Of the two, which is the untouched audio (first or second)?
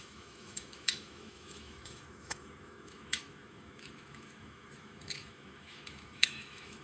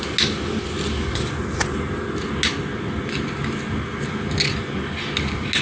second